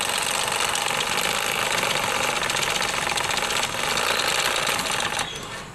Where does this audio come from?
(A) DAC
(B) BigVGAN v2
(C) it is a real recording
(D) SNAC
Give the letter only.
C